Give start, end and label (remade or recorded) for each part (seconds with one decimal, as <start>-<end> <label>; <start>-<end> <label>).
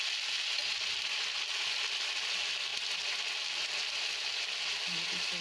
0.0-5.4 recorded